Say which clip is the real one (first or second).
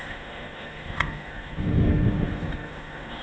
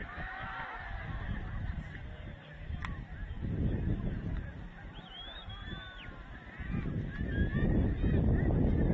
second